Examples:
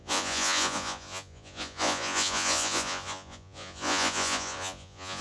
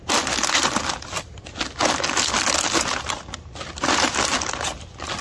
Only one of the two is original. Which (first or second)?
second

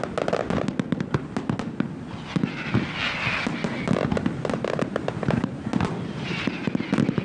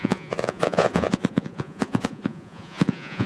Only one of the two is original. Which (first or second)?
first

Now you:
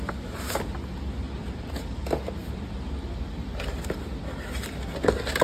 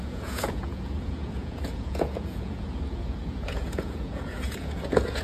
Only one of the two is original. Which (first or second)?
first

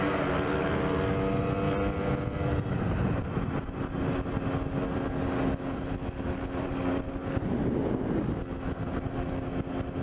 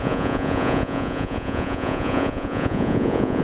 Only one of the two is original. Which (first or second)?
first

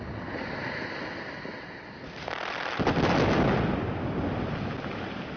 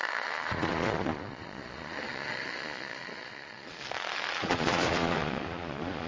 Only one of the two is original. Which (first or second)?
first